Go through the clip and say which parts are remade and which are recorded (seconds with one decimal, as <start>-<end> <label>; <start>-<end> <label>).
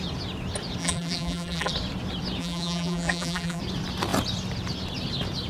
0.0-0.8 recorded; 0.8-1.7 remade; 1.7-2.4 recorded; 2.4-3.6 remade; 3.6-5.5 recorded